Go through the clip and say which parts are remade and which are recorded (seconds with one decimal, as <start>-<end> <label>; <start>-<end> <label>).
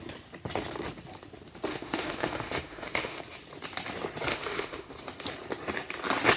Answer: 0.0-1.7 recorded; 1.7-3.2 remade; 3.2-4.3 recorded; 4.3-4.9 remade; 4.9-6.4 recorded